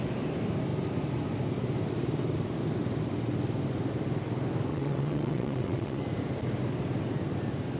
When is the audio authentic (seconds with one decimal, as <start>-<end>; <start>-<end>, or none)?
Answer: 0.0-4.7; 6.0-7.8